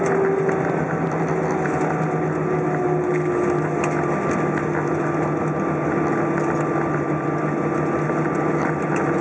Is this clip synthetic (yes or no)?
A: no